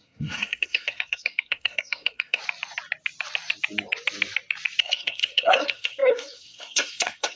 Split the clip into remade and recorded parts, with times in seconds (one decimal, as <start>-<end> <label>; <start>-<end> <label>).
0.0-2.4 remade; 2.4-4.8 recorded; 4.8-7.4 remade